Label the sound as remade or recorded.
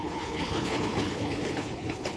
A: remade